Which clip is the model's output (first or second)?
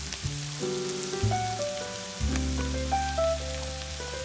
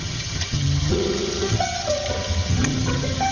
second